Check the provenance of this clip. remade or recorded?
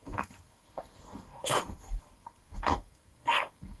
remade